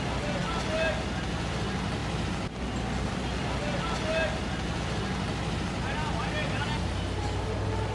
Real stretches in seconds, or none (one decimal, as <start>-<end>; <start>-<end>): 0.0-7.9